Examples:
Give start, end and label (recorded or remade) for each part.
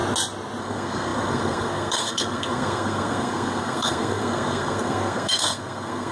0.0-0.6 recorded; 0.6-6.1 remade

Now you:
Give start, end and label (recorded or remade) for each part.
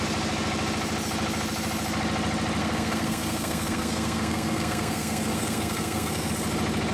0.0-2.6 recorded; 2.6-6.3 remade; 6.3-6.9 recorded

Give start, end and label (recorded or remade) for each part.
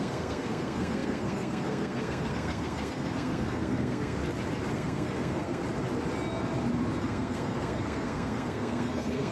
0.0-4.2 remade; 4.2-4.7 recorded; 4.7-5.6 remade; 5.6-7.0 recorded; 7.0-9.3 remade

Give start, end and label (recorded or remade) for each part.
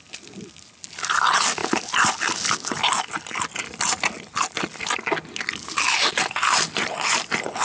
0.0-7.6 recorded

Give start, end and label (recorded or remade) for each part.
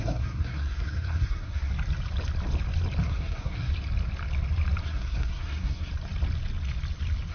0.0-1.7 remade; 1.7-3.0 recorded; 3.0-3.7 remade; 3.7-4.8 recorded; 4.8-5.9 remade; 5.9-7.3 recorded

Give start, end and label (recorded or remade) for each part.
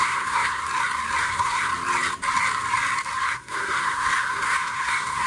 0.0-0.6 remade; 0.6-1.2 recorded; 1.2-1.7 remade; 1.7-3.2 recorded; 3.2-5.3 remade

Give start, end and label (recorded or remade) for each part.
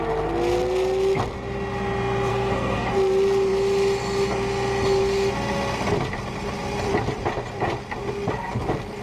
0.0-2.3 recorded; 2.3-2.9 remade; 2.9-9.0 recorded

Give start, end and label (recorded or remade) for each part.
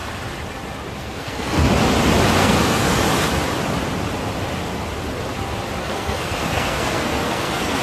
0.0-1.0 recorded; 1.0-1.7 remade; 1.7-2.4 recorded; 2.4-3.0 remade; 3.0-5.8 recorded; 5.8-7.8 remade